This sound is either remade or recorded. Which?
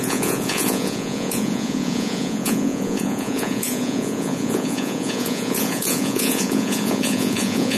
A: remade